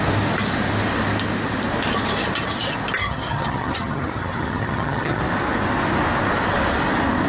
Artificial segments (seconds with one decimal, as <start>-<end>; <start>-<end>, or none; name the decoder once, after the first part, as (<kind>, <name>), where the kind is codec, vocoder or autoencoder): 3.0-5.2 (vocoder, HiFi-GAN)